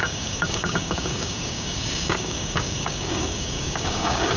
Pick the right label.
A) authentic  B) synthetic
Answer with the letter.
B